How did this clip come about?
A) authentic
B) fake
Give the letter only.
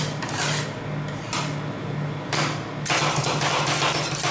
A